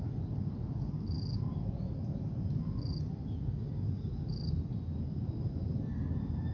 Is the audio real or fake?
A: real